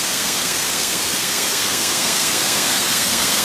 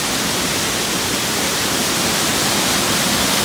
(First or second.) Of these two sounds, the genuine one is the second